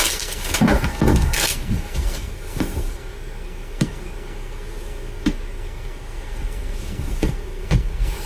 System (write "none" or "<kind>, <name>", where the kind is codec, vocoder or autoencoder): codec, SNAC